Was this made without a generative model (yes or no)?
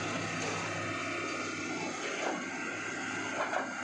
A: yes